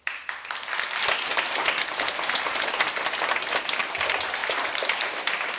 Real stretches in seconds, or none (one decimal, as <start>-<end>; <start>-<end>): 0.0-5.6